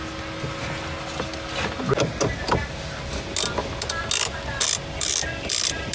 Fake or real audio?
real